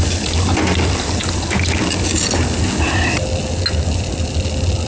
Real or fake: real